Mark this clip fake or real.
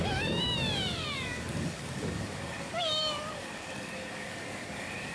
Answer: fake